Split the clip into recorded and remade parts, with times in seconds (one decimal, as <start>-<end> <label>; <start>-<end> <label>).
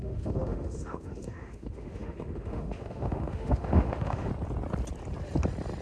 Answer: 0.0-4.3 remade; 4.3-5.8 recorded